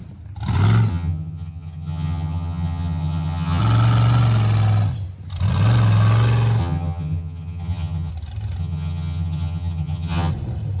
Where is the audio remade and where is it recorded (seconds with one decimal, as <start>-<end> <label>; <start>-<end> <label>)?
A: 0.0-0.9 recorded; 0.9-3.6 remade; 3.6-6.6 recorded; 6.6-8.1 remade; 8.1-8.6 recorded; 8.6-10.3 remade; 10.3-10.8 recorded